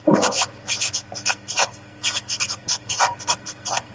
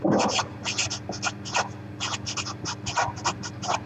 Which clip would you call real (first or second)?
second